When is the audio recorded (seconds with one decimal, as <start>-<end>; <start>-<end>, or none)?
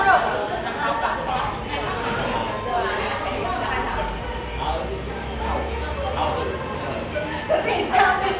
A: 0.0-8.4